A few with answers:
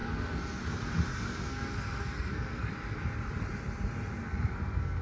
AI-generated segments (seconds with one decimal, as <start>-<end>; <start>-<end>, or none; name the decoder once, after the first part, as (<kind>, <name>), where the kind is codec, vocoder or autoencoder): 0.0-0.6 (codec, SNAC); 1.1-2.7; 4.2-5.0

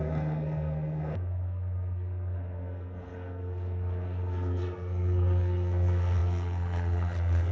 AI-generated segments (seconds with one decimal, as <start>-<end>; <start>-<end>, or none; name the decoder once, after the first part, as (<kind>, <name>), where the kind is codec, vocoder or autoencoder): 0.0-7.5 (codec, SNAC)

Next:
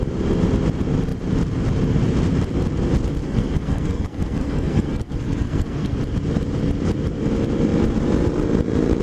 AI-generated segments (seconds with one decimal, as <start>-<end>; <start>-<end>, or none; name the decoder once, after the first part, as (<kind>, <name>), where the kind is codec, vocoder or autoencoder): 3.2-6.0 (codec, SNAC)

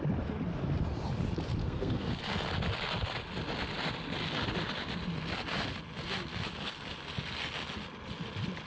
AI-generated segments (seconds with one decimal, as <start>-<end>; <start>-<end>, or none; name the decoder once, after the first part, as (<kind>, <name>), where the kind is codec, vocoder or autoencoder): 1.6-2.2 (codec, SNAC)

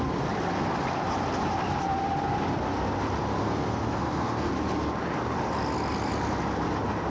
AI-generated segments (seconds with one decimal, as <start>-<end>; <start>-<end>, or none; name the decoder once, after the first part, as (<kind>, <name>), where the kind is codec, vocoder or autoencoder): 3.4-4.5 (codec, SNAC)

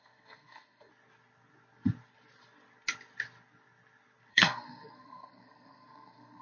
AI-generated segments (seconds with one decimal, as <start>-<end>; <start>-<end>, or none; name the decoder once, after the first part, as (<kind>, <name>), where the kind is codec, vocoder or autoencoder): 0.0-0.9 (codec, SNAC); 4.3-6.4

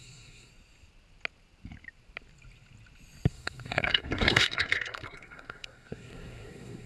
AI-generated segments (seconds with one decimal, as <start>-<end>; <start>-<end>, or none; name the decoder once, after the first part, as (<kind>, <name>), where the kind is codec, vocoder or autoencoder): 0.0-0.5 (codec, SNAC); 3.3-6.9

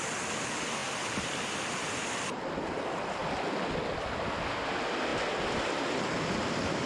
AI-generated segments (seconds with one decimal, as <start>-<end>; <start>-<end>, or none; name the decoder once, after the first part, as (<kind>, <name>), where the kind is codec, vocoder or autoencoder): none